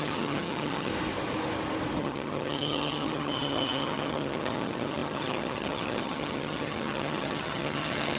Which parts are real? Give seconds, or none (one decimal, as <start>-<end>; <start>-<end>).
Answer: 0.9-2.0